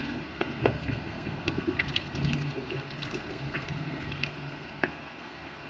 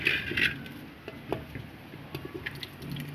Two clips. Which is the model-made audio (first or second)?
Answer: first